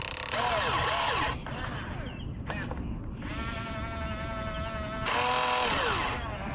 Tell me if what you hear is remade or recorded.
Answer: recorded